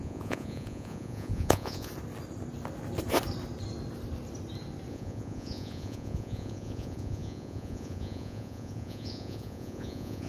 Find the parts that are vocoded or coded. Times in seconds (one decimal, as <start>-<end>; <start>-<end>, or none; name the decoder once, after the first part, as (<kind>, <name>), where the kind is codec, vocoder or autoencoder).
0.0-1.9 (vocoder, Vocos); 4.9-10.3